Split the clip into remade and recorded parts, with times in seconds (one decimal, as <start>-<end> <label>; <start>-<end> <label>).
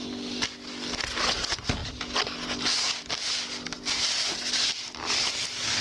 0.0-5.8 recorded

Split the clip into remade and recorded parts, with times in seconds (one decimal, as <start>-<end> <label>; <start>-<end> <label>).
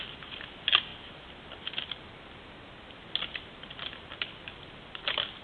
0.0-5.4 recorded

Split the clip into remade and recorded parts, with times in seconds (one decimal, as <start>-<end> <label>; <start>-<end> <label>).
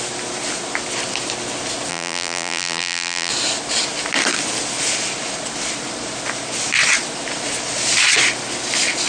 0.0-1.9 recorded; 1.9-3.3 remade; 3.3-9.1 recorded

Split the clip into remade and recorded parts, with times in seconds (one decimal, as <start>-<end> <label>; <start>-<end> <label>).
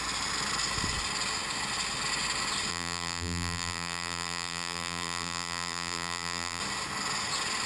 0.0-2.7 recorded; 2.7-6.6 remade; 6.6-7.7 recorded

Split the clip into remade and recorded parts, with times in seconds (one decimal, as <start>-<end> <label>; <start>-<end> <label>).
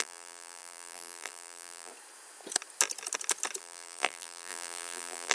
0.0-1.9 remade; 1.9-3.6 recorded; 3.6-5.3 remade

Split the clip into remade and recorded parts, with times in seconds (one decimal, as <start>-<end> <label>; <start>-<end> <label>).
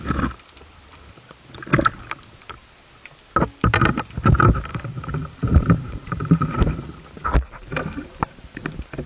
0.0-4.7 recorded; 4.7-7.0 remade; 7.0-9.1 recorded